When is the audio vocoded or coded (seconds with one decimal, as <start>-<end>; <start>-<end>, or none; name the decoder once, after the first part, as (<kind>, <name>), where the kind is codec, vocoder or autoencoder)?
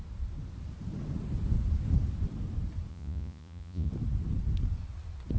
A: 2.9-3.9 (vocoder, Vocos)